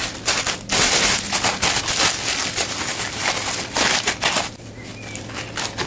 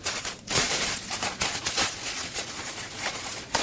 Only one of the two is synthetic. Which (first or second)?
second